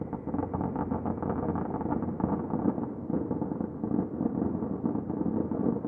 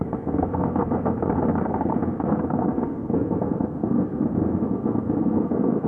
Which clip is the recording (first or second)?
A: first